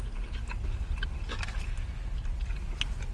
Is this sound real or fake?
real